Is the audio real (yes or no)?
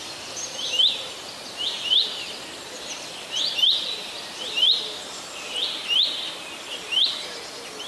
yes